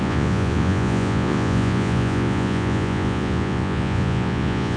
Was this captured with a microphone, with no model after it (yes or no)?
no